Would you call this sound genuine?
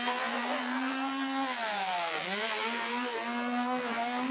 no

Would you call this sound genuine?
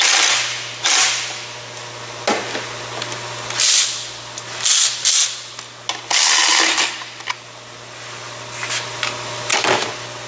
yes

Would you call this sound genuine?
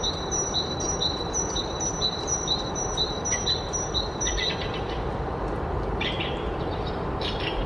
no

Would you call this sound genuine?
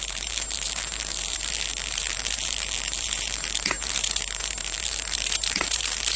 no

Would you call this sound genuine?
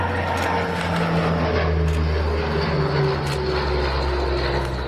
yes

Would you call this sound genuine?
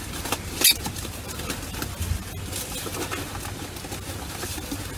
yes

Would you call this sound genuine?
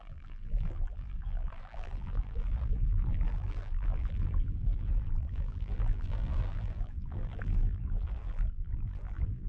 no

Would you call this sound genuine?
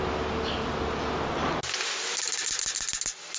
yes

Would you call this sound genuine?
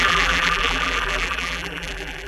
no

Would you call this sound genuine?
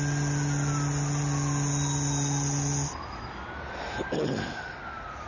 yes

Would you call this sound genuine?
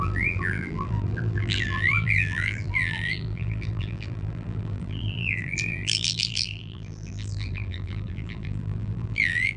no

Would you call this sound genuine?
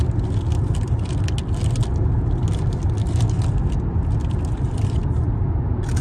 yes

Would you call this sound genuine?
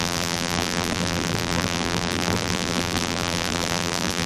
no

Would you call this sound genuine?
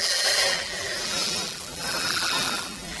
no